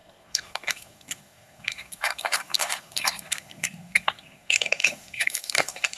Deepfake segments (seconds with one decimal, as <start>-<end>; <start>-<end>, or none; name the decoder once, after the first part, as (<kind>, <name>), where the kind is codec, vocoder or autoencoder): 0.0-6.0 (codec, SNAC)